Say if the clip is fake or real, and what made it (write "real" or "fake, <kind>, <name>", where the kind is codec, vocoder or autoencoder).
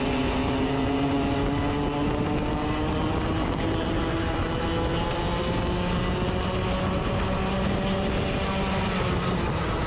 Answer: real